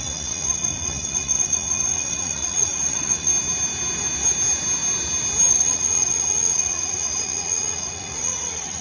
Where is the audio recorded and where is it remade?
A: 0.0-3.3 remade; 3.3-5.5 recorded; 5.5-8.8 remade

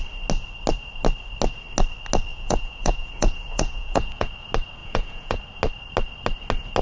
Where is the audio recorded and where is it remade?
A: 0.0-2.3 recorded; 2.3-4.3 remade; 4.3-4.8 recorded; 4.8-5.4 remade; 5.4-6.8 recorded